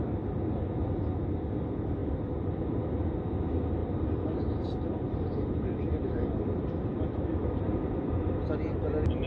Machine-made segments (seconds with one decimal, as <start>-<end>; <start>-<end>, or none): 3.8-7.6